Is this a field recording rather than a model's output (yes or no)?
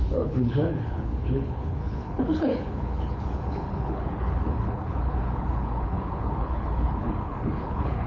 no